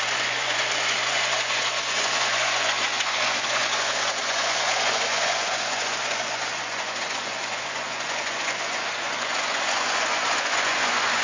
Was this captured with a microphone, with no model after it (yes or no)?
no